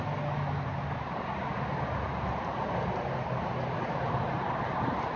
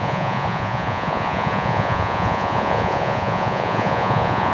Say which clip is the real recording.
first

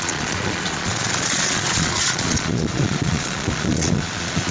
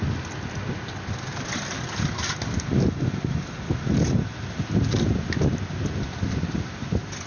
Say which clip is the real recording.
second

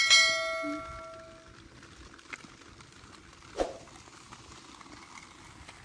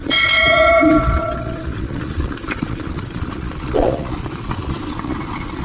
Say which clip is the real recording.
first